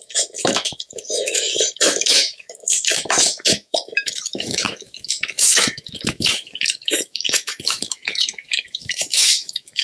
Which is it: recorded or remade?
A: remade